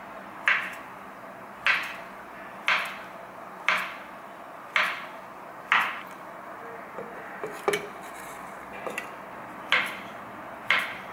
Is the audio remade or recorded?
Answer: recorded